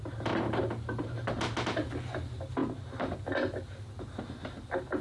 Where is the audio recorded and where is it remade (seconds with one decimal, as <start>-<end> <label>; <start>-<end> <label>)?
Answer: 0.0-5.0 recorded